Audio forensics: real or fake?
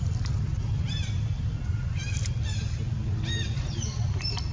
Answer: real